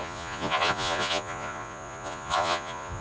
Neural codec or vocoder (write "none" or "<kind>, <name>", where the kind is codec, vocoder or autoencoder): vocoder, Vocos